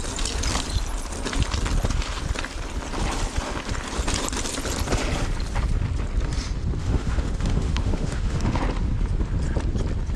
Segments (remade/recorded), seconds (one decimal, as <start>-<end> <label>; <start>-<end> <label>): 0.0-6.8 recorded; 6.8-8.6 remade; 8.6-10.2 recorded